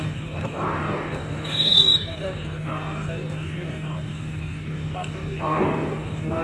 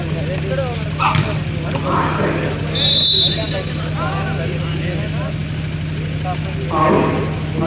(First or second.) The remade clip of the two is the first